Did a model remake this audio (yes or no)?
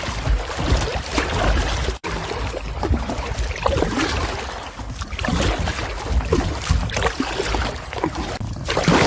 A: no